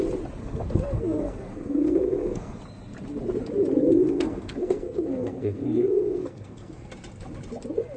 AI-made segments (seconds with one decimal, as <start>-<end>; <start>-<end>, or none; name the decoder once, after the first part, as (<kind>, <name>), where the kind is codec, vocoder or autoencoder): 0.4-2.6 (codec, SNAC); 3.8-6.9